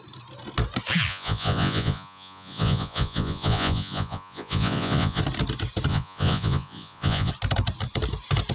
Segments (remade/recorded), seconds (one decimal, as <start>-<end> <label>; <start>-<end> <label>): 0.0-1.1 recorded; 1.1-5.2 remade; 5.2-5.9 recorded; 5.9-7.3 remade; 7.3-8.5 recorded